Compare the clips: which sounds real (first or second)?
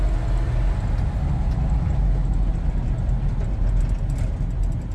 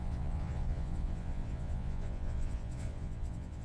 first